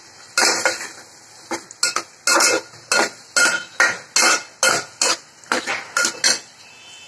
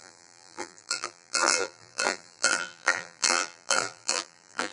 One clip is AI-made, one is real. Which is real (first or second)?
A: first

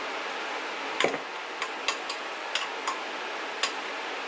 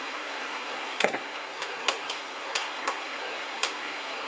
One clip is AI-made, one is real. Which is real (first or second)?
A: first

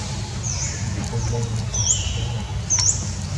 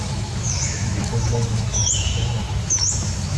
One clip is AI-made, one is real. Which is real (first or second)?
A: first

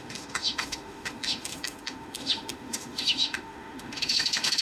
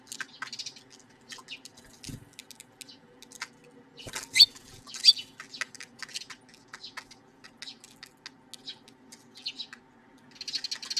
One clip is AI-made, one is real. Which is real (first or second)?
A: second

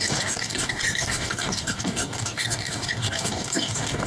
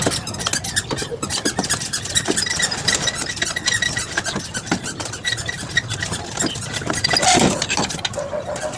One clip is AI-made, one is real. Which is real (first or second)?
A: second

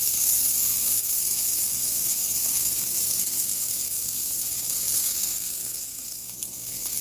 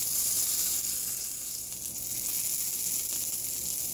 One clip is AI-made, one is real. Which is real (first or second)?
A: second